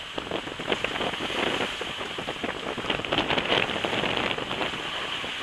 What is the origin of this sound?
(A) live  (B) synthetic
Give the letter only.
A